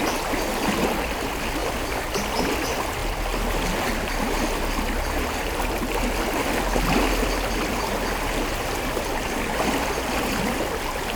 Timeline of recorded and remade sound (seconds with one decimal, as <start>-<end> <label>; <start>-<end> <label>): 0.0-11.2 recorded